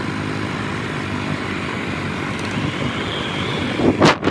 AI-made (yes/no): no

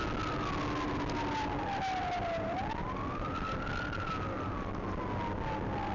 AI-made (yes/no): no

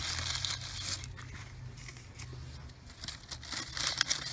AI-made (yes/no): no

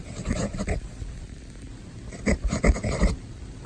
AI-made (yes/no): no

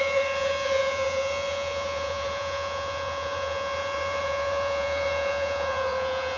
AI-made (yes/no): yes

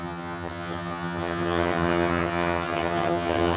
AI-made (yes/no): yes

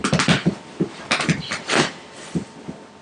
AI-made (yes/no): no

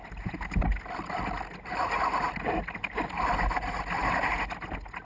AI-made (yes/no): no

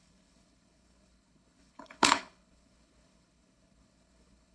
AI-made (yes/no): yes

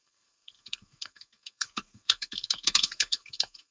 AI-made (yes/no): yes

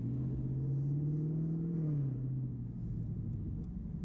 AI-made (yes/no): no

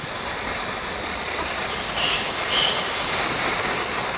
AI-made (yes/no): no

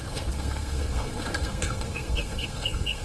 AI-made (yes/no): yes